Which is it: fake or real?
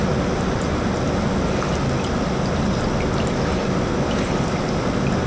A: real